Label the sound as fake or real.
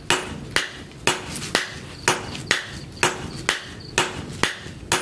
real